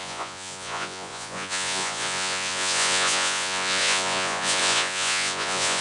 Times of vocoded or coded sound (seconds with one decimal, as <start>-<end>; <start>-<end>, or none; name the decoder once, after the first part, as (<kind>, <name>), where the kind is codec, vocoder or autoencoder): 0.0-5.8 (vocoder, Vocos)

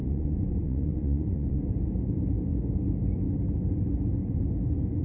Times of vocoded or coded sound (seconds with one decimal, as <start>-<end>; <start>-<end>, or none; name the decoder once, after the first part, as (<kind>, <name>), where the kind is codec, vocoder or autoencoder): 0.0-1.6 (vocoder, Vocos)

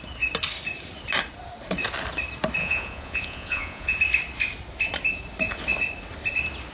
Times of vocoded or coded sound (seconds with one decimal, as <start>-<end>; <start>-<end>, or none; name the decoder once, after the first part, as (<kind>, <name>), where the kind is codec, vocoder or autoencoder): 2.6-4.0 (vocoder, Vocos)